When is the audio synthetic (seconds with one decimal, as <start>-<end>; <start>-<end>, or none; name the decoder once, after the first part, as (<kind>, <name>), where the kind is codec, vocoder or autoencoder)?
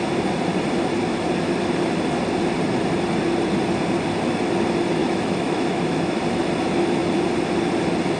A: 5.0-6.2 (autoencoder, DAC-VAE)